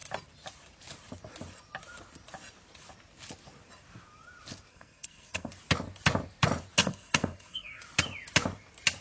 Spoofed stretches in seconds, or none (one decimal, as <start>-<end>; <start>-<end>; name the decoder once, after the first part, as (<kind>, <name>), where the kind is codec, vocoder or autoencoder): 4.7-5.5 (codec, SNAC); 6.8-7.8